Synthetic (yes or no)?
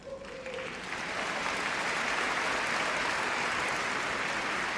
no